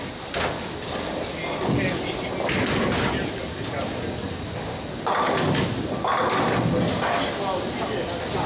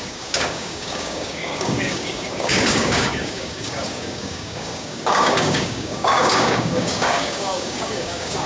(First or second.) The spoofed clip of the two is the second